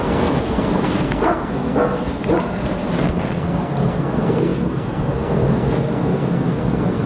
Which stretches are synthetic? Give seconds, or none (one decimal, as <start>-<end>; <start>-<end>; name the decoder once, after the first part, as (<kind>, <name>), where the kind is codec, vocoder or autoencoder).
0.0-2.2 (codec, SNAC); 3.0-7.1